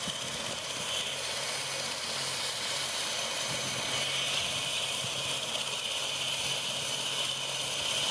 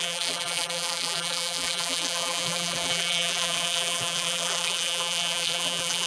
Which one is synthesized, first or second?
second